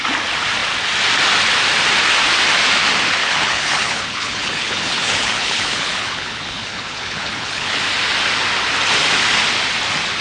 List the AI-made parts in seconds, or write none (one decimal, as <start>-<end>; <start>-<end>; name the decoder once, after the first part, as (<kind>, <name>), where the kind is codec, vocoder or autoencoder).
3.2-7.8 (codec, HILCodec)

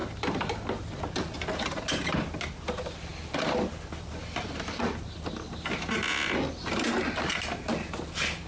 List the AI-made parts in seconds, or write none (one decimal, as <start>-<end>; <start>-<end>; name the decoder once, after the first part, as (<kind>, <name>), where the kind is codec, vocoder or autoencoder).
none

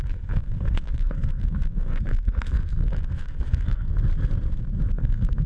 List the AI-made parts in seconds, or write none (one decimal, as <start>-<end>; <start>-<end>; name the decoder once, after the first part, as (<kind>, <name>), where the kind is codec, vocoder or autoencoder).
0.0-3.9 (codec, SNAC); 4.9-5.5

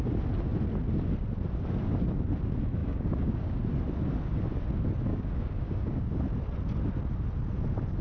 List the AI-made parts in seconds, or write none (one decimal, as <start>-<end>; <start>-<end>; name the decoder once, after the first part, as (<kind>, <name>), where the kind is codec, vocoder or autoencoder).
2.8-3.6 (codec, DAC); 5.1-6.1